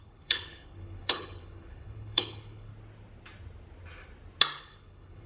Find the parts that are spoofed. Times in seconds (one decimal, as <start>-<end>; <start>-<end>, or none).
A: 0.0-2.7; 4.6-5.3